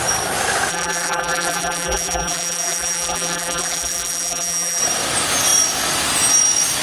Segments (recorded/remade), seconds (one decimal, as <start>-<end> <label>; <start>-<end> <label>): 0.0-0.7 recorded; 0.7-4.8 remade; 4.8-6.8 recorded